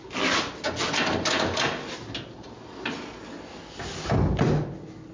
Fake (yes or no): no